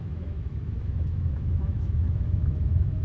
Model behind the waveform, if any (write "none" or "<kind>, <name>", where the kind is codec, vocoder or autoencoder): autoencoder, DAC-VAE